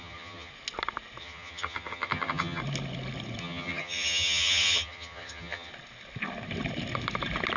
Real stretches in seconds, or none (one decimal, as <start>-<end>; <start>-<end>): 0.5-1.2; 2.6-3.4; 5.7-7.6